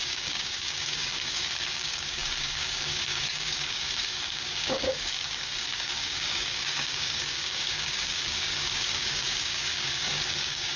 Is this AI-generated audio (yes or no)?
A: yes